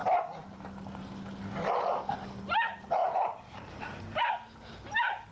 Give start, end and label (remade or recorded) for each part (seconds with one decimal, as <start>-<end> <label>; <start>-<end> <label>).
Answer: 0.0-3.0 recorded; 3.0-4.3 remade; 4.3-5.3 recorded

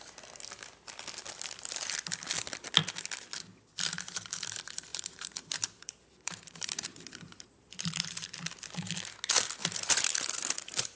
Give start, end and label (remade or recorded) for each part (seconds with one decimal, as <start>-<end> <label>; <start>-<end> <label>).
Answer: 0.0-4.9 recorded; 4.9-8.2 remade; 8.2-9.6 recorded; 9.6-11.0 remade

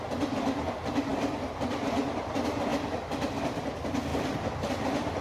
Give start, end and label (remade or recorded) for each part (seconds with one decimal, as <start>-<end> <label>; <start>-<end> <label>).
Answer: 0.0-2.7 recorded; 2.7-3.4 remade; 3.4-4.1 recorded; 4.1-4.7 remade; 4.7-5.2 recorded

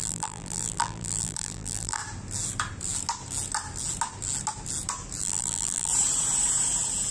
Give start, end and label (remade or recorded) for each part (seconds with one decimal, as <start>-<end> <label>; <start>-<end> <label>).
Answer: 0.0-2.0 remade; 2.0-5.2 recorded; 5.2-5.9 remade; 5.9-7.1 recorded